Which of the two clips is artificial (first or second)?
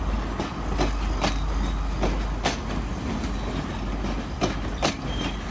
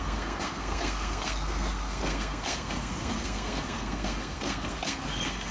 second